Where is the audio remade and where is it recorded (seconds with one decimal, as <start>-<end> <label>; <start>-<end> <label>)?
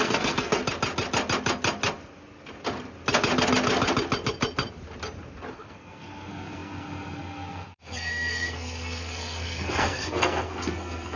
0.0-0.6 remade; 0.6-5.5 recorded; 5.5-11.2 remade